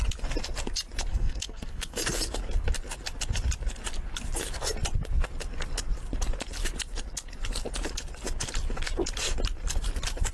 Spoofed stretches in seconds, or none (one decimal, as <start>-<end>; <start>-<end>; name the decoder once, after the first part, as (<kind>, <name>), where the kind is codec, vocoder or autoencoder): 1.1-2.0 (codec, SNAC)